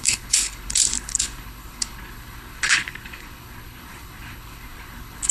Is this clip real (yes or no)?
no